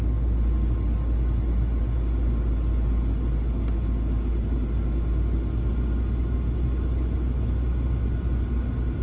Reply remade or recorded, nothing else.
recorded